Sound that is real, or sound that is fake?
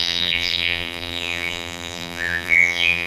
fake